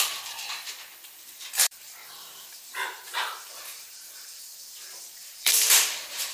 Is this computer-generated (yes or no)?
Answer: yes